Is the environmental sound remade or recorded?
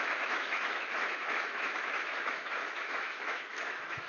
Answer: remade